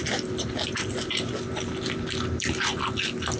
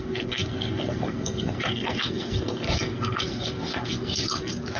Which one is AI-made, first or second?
second